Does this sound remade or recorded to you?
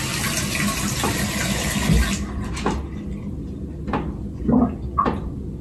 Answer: recorded